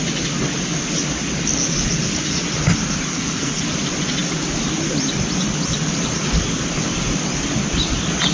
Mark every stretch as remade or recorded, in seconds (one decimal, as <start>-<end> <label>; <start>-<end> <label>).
0.0-3.1 recorded; 3.1-3.6 remade; 3.6-8.3 recorded